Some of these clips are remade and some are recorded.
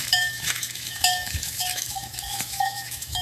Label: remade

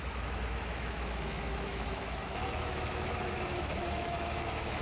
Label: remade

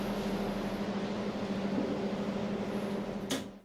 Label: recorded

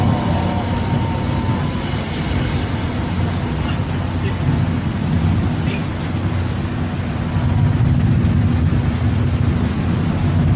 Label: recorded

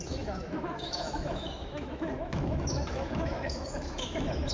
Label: remade